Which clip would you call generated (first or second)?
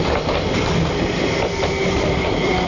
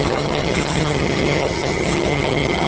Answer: second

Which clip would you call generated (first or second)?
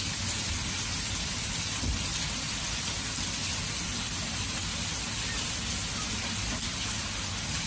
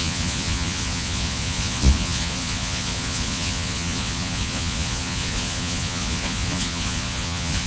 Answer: second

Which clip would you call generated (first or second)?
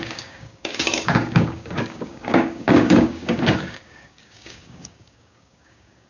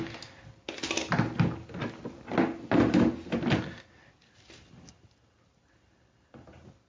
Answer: first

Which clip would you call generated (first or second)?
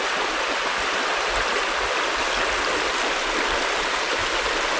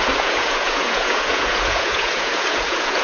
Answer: second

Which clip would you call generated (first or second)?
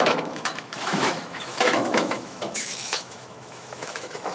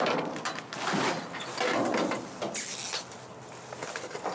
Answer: first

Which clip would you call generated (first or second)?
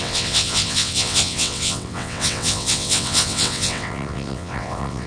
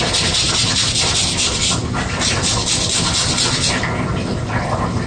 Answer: first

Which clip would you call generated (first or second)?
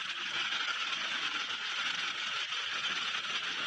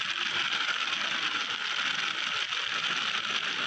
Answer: first